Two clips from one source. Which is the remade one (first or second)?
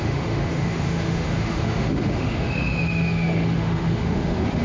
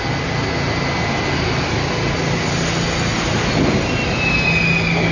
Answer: first